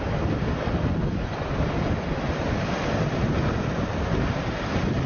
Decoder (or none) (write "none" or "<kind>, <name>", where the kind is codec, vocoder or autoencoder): none